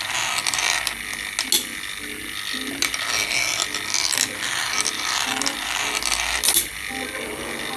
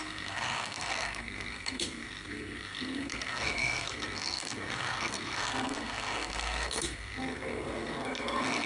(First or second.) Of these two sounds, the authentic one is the first